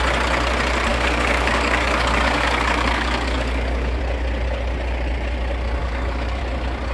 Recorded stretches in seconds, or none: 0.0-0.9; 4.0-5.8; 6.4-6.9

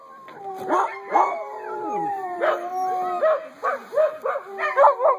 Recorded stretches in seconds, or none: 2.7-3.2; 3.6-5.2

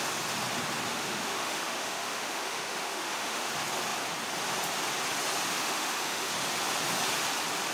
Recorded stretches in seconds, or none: 0.0-0.9; 3.5-5.6; 6.3-7.7

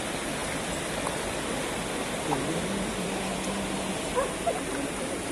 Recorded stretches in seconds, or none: 0.0-5.3

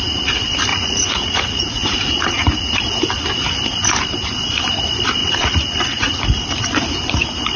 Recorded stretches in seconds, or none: 0.0-0.7; 2.7-5.2; 6.2-7.6

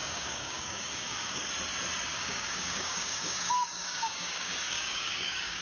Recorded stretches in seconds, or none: 1.5-2.1